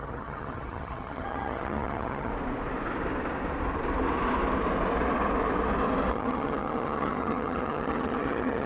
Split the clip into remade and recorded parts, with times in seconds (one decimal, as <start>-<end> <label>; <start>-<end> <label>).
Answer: 0.0-2.3 remade; 2.3-6.1 recorded; 6.1-8.7 remade